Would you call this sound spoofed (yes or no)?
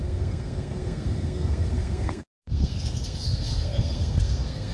yes